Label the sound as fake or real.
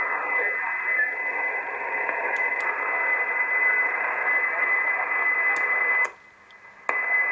real